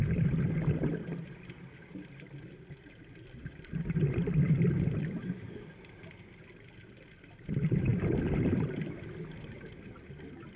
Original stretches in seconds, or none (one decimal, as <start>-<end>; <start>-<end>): 0.0-10.6